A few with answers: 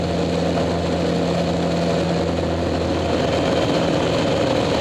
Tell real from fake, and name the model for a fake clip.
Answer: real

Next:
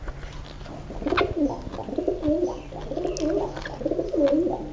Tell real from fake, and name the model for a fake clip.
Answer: real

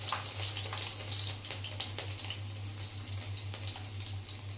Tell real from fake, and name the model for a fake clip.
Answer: real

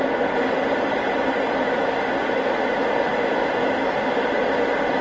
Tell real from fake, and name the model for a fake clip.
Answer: real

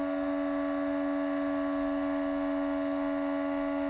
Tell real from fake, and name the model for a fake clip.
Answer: real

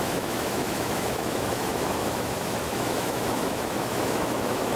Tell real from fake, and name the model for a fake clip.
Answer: fake, autoencoder, DAC-VAE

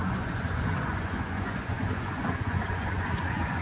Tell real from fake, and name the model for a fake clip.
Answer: fake, vocoder, Vocos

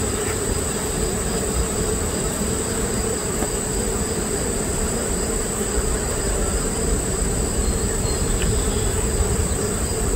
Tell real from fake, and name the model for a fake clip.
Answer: fake, vocoder, BigVGAN v2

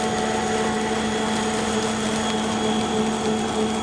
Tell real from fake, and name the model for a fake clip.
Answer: real